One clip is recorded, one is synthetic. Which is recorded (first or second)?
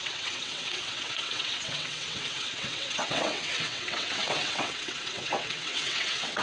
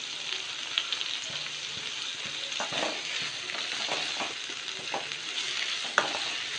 second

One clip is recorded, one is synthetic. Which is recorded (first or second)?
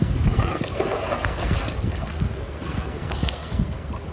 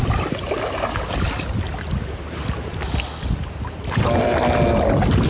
second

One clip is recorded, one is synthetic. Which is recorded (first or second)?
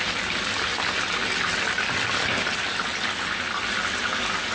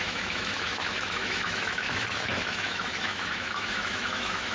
first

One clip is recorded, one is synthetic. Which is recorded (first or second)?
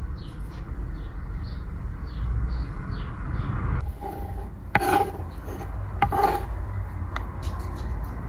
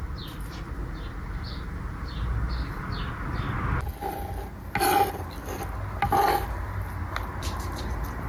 second